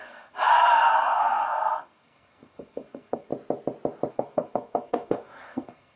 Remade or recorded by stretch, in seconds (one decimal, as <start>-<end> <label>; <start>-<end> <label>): 0.0-3.3 remade; 3.3-4.1 recorded; 4.1-6.0 remade